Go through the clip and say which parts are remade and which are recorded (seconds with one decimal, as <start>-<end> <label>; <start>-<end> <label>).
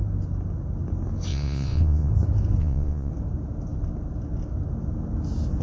0.0-1.3 recorded; 1.3-2.1 remade; 2.1-2.6 recorded; 2.6-3.1 remade; 3.1-5.6 recorded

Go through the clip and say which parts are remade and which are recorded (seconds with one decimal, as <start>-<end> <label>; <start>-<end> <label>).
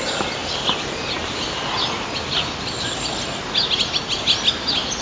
0.0-5.0 recorded